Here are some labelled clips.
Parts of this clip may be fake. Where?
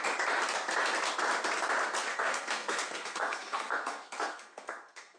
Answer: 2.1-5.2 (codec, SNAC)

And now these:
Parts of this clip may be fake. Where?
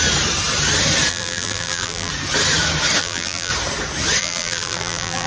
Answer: 1.1-2.1 (vocoder, BigVGAN v2); 3.0-3.5; 4.2-5.3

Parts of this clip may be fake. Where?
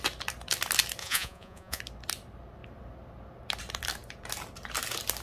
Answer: 1.0-1.8 (vocoder, Vocos)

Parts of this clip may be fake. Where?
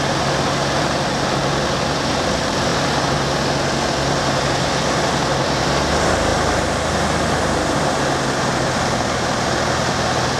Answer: none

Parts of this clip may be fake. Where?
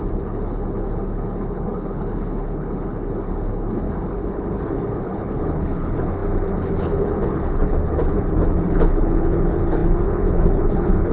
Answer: 0.0-11.1 (codec, HILCodec)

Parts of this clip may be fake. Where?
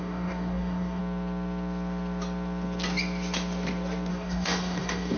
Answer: 0.0-1.0 (codec, DAC); 4.1-5.2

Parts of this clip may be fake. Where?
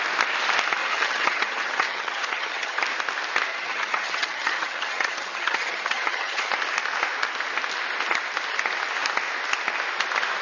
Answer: 0.8-2.8 (vocoder, HiFi-GAN); 3.5-6.5